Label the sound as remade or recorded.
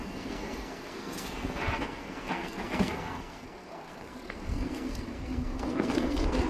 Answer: remade